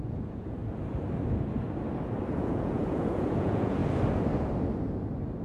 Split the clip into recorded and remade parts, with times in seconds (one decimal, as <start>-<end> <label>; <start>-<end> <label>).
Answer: 0.0-0.6 remade; 0.6-2.4 recorded; 2.4-3.8 remade; 3.8-5.4 recorded